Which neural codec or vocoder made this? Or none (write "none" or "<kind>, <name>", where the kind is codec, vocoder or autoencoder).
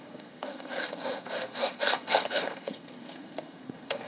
codec, SNAC